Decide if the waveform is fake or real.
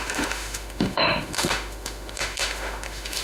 fake